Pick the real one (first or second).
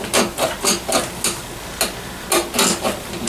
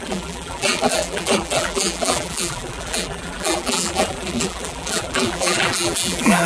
first